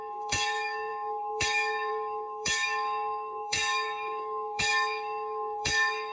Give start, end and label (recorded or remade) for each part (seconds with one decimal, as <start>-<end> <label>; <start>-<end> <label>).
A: 0.0-6.1 remade

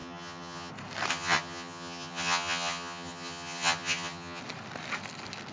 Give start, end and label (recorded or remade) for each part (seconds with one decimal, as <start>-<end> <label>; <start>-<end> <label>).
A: 0.0-0.7 remade; 0.7-1.1 recorded; 1.1-4.4 remade; 4.4-5.5 recorded